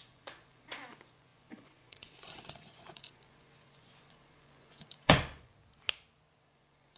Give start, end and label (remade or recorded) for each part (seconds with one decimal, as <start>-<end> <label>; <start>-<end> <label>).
0.0-5.6 remade; 5.6-6.4 recorded; 6.4-7.0 remade

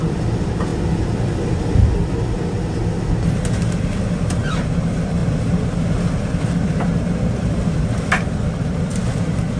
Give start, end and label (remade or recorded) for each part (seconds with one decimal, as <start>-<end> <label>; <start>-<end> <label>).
0.0-9.6 recorded

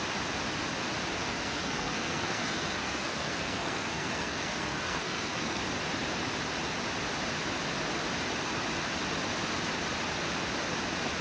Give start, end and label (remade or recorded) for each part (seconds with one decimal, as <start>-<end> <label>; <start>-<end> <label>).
0.0-1.2 recorded; 1.2-5.6 remade; 5.6-11.2 recorded

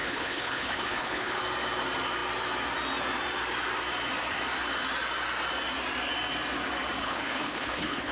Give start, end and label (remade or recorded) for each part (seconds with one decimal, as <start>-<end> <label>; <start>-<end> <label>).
0.0-1.4 remade; 1.4-7.0 recorded; 7.0-8.1 remade

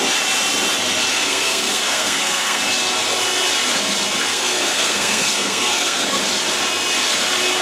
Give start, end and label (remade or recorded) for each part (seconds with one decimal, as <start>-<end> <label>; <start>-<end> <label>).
0.0-1.1 recorded; 1.1-2.6 remade; 2.6-4.3 recorded; 4.3-6.2 remade; 6.2-7.6 recorded

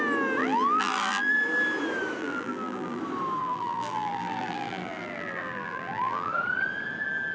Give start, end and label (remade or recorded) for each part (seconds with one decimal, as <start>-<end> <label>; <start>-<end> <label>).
0.0-0.4 recorded; 0.4-1.3 remade; 1.3-2.2 recorded; 2.2-3.0 remade; 3.0-3.4 recorded; 3.4-6.3 remade; 6.3-7.3 recorded

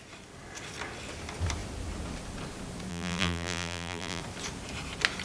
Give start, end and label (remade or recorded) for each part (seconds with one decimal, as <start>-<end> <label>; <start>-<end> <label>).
0.0-2.9 recorded; 2.9-4.2 remade; 4.2-5.2 recorded

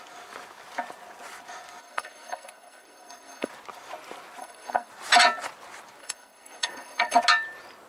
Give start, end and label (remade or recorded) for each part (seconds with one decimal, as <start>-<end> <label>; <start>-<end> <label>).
0.0-1.8 recorded; 1.8-3.5 remade; 3.5-4.4 recorded; 4.4-4.9 remade; 4.9-6.0 recorded; 6.0-7.2 remade; 7.2-7.9 recorded